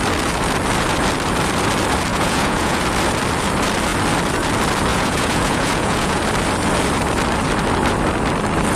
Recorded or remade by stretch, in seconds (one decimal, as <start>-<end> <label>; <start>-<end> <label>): 0.0-2.1 recorded; 2.1-2.8 remade; 2.8-4.9 recorded; 4.9-6.2 remade; 6.2-8.8 recorded